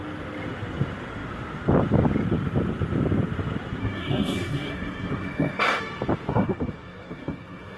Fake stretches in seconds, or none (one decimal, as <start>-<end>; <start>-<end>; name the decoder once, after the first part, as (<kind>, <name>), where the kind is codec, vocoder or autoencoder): 3.8-5.8 (codec, SNAC); 6.3-7.8